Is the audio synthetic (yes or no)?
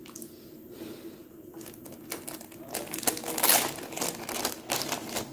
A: no